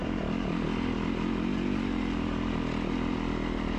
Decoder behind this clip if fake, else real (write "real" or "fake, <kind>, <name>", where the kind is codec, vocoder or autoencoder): real